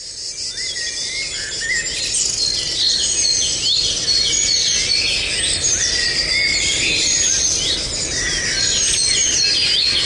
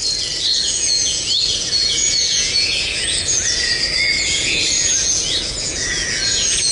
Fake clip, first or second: second